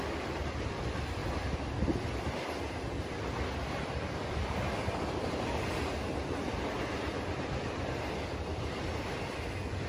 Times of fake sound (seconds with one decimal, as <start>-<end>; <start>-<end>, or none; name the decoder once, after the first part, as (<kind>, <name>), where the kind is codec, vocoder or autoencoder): 0.0-9.9 (vocoder, BigVGAN v2)